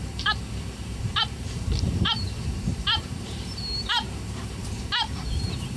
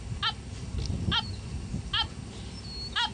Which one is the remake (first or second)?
first